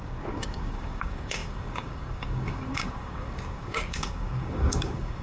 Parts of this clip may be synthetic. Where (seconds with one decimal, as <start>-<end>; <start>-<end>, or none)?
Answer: 0.0-5.2